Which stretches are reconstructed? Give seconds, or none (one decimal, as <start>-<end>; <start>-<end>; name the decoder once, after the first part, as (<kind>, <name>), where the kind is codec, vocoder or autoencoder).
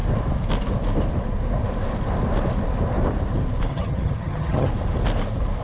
3.7-4.7 (vocoder, HiFi-GAN)